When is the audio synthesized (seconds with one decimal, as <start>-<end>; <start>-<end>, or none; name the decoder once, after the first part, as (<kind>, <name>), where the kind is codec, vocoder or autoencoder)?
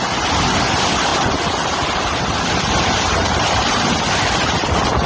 1.1-2.2 (vocoder, BigVGAN v2); 3.2-3.8